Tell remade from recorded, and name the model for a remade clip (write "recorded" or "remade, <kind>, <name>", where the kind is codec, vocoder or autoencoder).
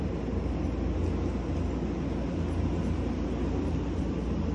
recorded